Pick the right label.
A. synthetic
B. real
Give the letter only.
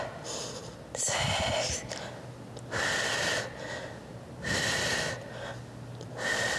B